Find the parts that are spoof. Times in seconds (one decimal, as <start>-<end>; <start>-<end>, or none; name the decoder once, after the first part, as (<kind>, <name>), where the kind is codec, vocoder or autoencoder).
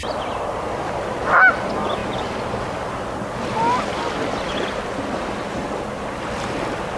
none